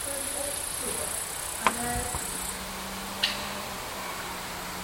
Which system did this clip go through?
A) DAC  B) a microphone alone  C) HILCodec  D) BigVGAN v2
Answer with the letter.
B